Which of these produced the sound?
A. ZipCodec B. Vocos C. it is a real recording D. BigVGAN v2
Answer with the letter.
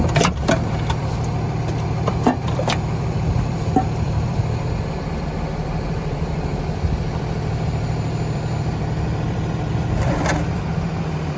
D